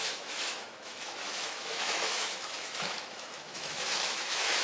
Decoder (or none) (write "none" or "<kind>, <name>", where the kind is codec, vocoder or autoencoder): autoencoder, DAC-VAE